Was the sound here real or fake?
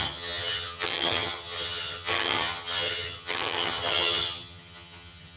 fake